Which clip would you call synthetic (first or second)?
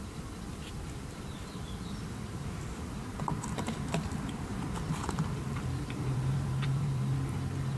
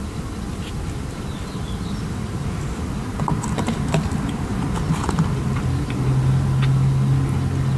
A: first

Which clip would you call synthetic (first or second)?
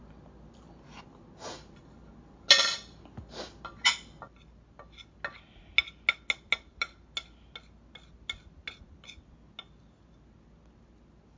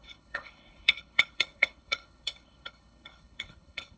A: second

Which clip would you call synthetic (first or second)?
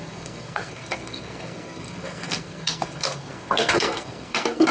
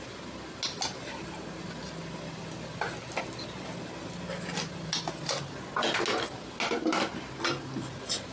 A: first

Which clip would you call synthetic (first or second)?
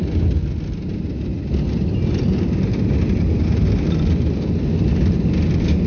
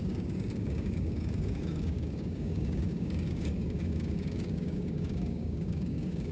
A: second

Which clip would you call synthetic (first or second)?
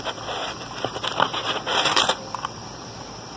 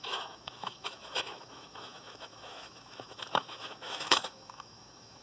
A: second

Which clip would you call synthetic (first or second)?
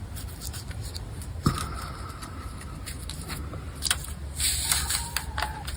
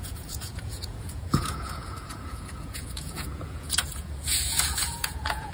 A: second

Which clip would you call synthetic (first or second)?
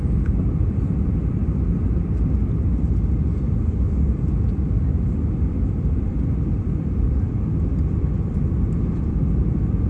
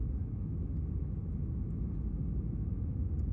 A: first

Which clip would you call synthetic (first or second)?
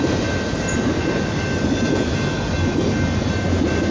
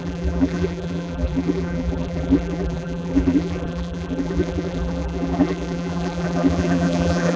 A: second